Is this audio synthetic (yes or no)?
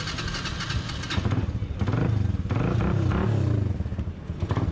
no